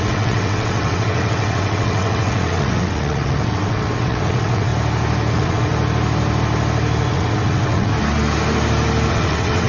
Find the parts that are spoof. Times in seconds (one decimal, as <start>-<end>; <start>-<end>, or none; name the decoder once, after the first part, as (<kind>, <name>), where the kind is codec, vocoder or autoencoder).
0.0-4.7 (vocoder, WaveNeXt); 5.3-5.7; 7.1-7.9; 9.1-9.7